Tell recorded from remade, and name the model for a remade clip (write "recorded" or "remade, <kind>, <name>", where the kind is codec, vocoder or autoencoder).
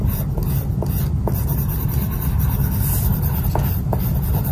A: recorded